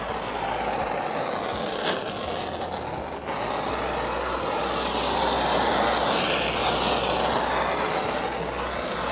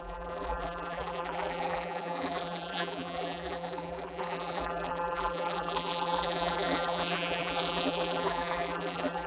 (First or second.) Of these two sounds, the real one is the first